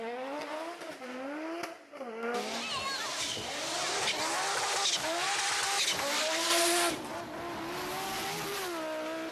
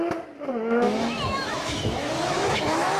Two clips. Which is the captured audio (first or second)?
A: first